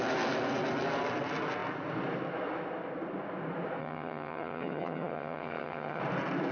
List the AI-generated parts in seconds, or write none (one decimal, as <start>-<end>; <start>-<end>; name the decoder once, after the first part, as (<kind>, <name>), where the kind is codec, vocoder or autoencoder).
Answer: 3.8-6.0 (vocoder, HiFi-GAN)